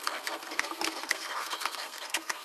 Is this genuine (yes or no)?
no